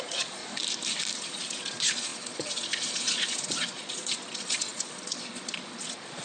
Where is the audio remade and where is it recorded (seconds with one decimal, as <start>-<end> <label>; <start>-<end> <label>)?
0.0-0.4 remade; 0.4-1.2 recorded; 1.2-6.2 remade